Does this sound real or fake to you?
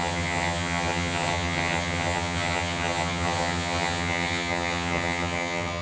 fake